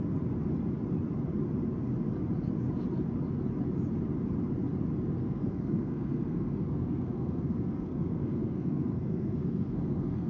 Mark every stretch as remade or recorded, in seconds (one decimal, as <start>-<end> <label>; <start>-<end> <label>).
0.0-5.1 recorded; 5.1-10.3 remade